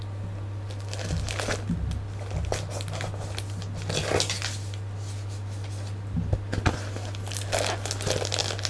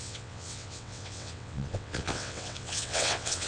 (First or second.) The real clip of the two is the first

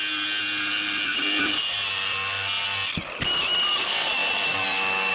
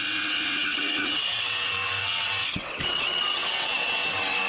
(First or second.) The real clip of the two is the first